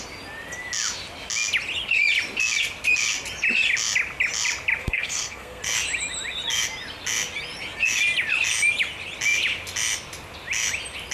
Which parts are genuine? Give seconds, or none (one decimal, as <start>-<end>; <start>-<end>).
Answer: 0.0-4.8; 5.6-11.1